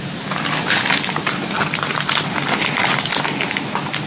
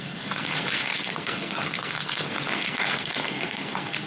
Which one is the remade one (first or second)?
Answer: second